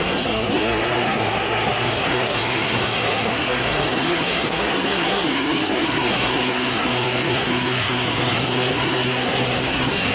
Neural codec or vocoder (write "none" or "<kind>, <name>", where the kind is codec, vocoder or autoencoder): codec, SNAC